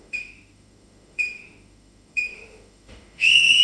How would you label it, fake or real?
fake